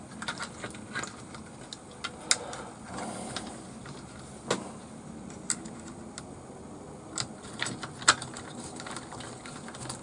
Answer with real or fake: real